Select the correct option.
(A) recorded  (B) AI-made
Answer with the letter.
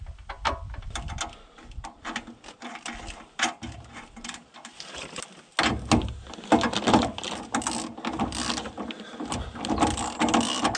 A